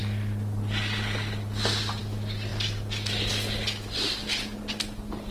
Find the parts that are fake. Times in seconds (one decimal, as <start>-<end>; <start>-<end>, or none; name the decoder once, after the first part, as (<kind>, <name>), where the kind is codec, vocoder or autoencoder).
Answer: none